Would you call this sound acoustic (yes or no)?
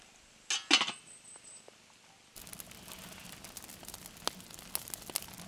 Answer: yes